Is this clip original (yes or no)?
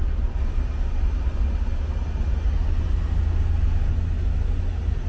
yes